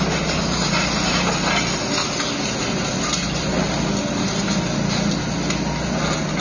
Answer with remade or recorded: recorded